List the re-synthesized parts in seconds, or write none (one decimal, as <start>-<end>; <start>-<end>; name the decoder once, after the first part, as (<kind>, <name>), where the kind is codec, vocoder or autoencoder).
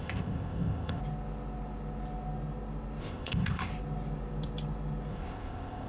0.0-1.0 (codec, ZipCodec); 3.0-3.7; 5.1-5.9